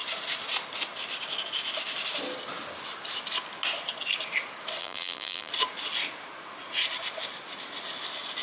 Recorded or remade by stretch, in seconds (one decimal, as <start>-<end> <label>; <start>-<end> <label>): 0.0-4.8 recorded; 4.8-5.5 remade; 5.5-8.4 recorded